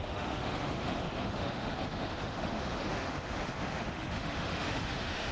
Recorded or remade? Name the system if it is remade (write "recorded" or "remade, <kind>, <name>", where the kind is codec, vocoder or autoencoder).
remade, autoencoder, DAC-VAE